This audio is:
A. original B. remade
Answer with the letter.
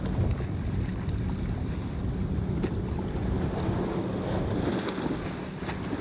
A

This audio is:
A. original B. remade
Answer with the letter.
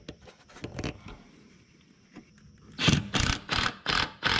A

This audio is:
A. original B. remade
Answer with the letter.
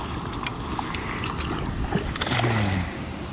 A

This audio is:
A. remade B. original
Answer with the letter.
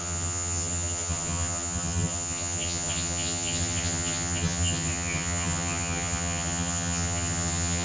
A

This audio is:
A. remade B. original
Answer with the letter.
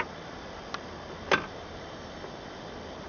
B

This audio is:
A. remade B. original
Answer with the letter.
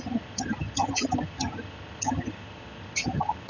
A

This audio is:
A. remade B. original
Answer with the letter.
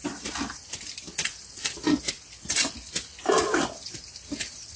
B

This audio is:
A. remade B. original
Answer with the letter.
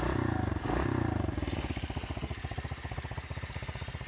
B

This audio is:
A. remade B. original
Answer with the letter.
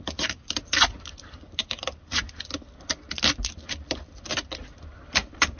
B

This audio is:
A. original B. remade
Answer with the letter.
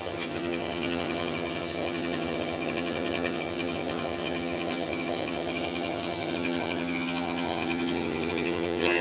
B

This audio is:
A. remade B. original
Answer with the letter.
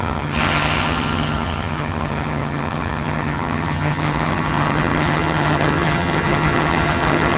A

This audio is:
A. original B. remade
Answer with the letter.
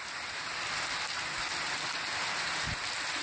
A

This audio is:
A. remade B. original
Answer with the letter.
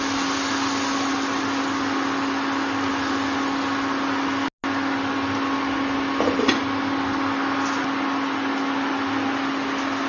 B